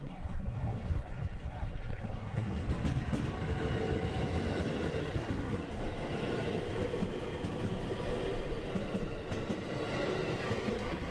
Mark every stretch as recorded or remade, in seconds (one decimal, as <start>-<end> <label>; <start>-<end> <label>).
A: 0.0-2.6 remade; 2.6-5.0 recorded; 5.0-5.8 remade; 5.8-10.7 recorded; 10.7-11.1 remade